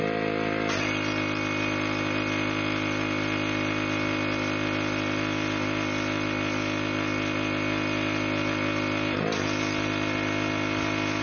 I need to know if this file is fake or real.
real